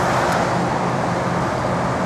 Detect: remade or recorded recorded